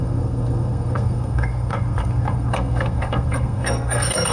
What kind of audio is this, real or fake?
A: fake